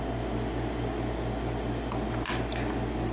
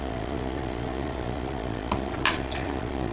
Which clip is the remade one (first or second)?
second